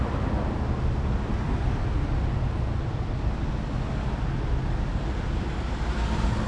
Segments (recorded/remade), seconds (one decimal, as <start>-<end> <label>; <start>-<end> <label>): 0.0-6.5 recorded